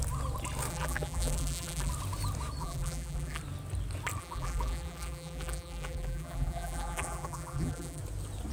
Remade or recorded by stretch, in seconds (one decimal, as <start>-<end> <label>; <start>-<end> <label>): 0.0-0.7 recorded; 0.7-1.9 remade; 1.9-2.6 recorded; 2.6-3.4 remade; 3.4-4.2 recorded; 4.2-8.0 remade; 8.0-8.5 recorded